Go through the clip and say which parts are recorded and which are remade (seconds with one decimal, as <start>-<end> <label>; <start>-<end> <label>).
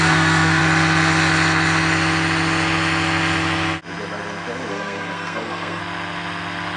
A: 0.0-0.6 remade; 0.6-4.7 recorded; 4.7-5.8 remade; 5.8-6.8 recorded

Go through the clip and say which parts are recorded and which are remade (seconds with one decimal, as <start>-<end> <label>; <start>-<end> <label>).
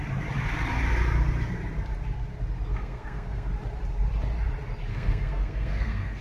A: 0.0-2.7 recorded; 2.7-3.5 remade; 3.5-4.9 recorded; 4.9-6.2 remade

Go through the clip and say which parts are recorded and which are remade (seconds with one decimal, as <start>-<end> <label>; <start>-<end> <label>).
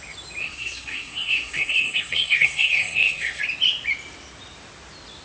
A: 0.0-0.4 recorded; 0.4-3.4 remade; 3.4-5.2 recorded